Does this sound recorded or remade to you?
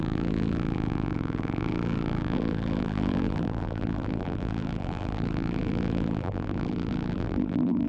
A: remade